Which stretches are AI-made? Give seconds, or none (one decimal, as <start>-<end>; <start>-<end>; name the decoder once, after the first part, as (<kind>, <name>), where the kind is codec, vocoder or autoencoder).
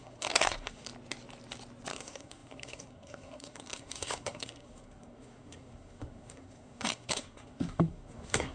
0.0-0.9 (codec, SNAC); 1.9-8.5